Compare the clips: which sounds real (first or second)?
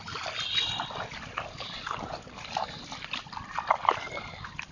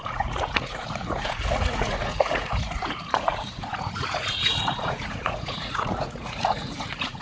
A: first